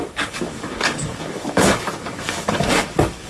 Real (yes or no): no